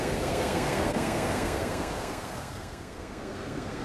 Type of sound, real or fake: fake